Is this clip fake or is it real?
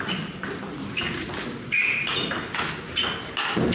real